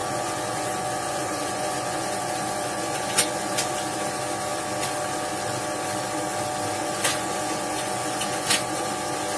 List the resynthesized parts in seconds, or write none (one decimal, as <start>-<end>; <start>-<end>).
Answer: 0.0-3.7; 6.8-8.9